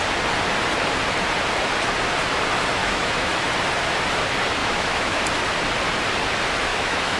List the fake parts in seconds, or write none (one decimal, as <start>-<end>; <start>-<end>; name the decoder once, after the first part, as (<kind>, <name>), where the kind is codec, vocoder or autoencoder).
2.8-3.5 (autoencoder, DAC-VAE); 4.6-5.2; 6.7-7.2